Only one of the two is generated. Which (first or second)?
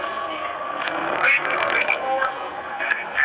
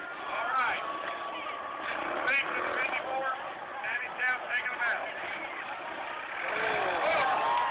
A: first